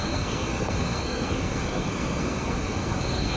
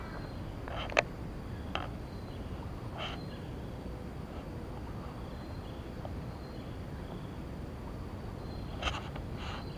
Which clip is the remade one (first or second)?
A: first